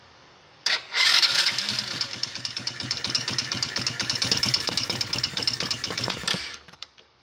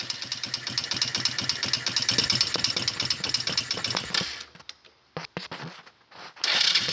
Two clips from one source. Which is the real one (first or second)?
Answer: second